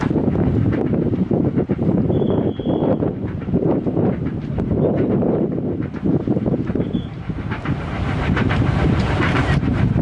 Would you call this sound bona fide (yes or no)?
no